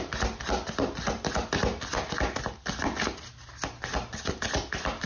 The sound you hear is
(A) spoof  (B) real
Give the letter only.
B